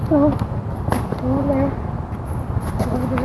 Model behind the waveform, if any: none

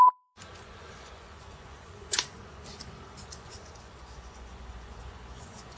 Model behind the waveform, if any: vocoder, Vocos